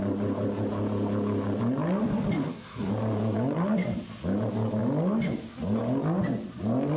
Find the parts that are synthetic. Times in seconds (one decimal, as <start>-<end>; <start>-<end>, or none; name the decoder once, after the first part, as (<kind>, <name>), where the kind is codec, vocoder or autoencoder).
2.4-2.9 (codec, SNAC)